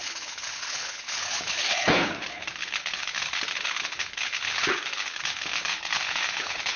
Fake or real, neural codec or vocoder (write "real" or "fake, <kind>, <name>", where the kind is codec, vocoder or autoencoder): fake, codec, HILCodec